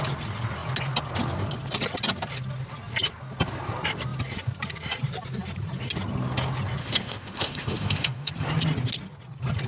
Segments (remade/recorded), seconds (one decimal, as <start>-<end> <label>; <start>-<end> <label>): 0.0-6.8 recorded; 6.8-8.3 remade; 8.3-9.7 recorded